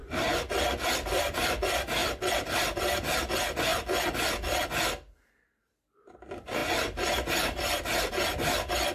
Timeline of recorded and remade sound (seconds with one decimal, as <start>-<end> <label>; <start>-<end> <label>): 0.0-8.9 recorded